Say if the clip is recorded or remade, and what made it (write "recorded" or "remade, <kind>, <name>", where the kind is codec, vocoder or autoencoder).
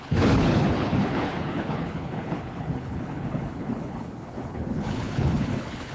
remade, codec, HILCodec